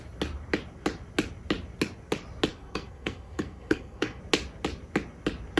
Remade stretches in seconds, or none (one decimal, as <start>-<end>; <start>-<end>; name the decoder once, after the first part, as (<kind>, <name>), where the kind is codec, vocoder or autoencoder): 2.5-4.2 (codec, SNAC)